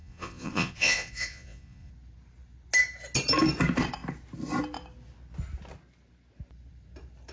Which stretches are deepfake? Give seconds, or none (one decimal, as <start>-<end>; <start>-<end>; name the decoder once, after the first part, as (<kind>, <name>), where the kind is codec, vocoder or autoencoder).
0.0-1.9 (vocoder, Vocos)